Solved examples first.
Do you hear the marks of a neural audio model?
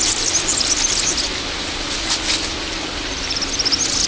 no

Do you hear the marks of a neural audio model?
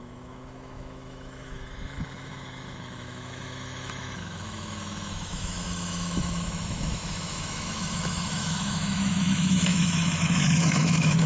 yes